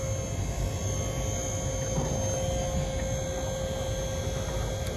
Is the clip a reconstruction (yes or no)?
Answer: no